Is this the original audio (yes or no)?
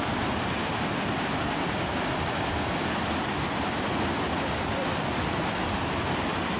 yes